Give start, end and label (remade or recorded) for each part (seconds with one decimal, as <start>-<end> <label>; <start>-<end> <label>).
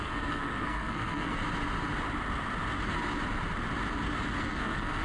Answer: 0.0-1.4 remade; 1.4-4.4 recorded; 4.4-5.0 remade